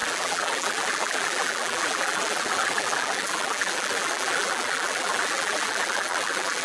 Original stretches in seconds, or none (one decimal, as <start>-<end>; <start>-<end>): none